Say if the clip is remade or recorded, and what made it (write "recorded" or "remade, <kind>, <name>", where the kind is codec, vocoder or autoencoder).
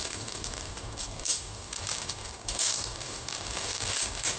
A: remade, codec, DAC